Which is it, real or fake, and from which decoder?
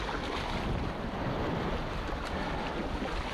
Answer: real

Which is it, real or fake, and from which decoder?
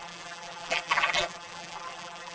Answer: fake, vocoder, BigVGAN v2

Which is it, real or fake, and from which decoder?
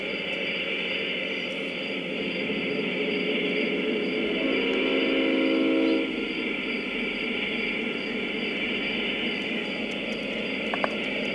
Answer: real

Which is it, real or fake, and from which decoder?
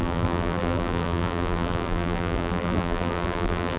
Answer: fake, vocoder, BigVGAN v2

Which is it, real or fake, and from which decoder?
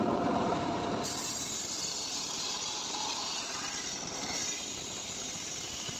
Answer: fake, vocoder, BigVGAN v2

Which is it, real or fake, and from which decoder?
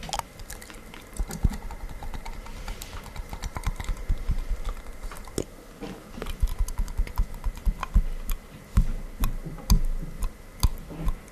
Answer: real